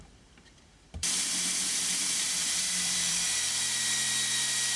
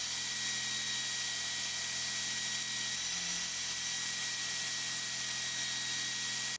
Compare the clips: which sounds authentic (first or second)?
second